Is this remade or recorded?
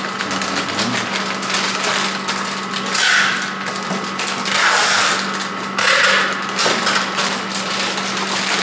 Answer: recorded